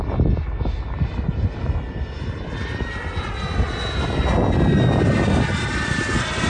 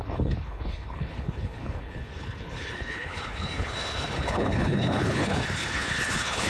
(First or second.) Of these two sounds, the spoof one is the second